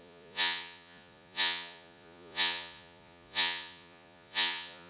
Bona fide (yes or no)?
no